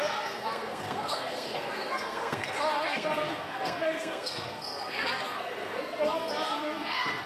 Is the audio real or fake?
fake